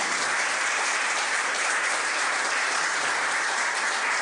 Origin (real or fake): fake